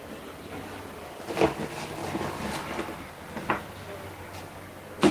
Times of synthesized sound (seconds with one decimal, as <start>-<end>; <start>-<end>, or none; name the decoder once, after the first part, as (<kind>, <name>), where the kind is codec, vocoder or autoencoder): 2.0-4.4 (vocoder, BigVGAN v2)